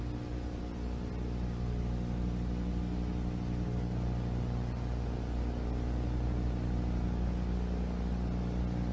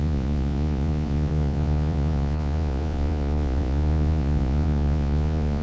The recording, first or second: first